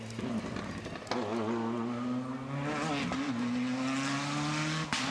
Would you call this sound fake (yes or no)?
no